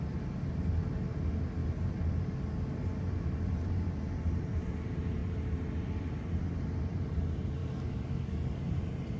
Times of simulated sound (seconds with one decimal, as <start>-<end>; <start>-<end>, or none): 7.6-8.7